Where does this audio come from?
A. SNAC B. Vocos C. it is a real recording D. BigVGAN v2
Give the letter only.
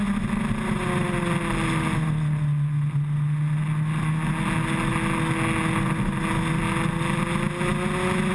C